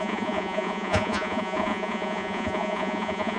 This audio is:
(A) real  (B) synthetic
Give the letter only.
B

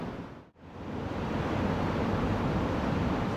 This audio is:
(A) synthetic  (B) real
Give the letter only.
B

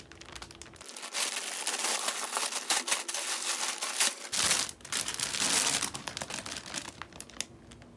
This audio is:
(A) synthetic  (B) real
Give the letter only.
B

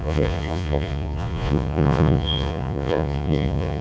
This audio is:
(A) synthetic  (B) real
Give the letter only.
A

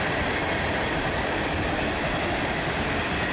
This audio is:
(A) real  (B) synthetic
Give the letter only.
A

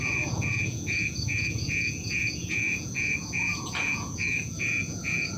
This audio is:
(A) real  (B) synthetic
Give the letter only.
B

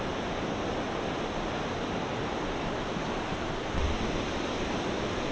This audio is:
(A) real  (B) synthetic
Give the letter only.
A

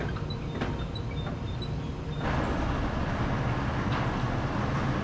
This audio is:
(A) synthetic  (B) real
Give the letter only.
B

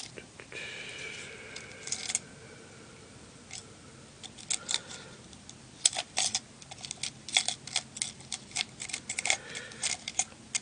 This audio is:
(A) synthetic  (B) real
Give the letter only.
B